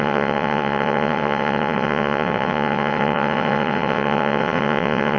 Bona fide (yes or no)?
no